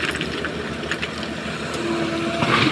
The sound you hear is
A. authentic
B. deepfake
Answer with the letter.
A